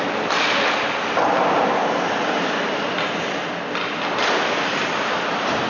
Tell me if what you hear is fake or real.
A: real